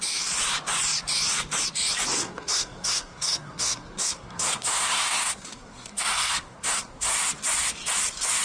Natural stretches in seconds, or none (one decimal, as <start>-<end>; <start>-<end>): 0.0-2.2; 7.1-8.4

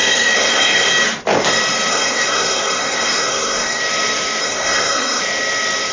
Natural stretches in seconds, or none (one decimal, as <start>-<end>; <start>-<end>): 0.9-1.9; 3.8-4.4; 5.2-5.9

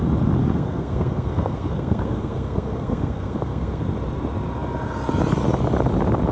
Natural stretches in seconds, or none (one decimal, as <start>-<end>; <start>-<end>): 0.0-0.4; 3.8-6.3

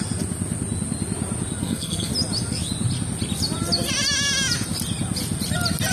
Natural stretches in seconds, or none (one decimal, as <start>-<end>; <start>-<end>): 0.0-1.6; 2.1-5.9